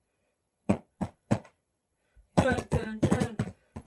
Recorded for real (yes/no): no